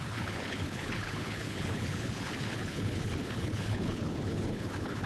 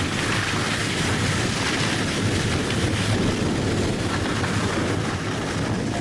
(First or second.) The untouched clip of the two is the second